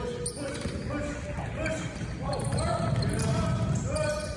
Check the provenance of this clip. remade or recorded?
recorded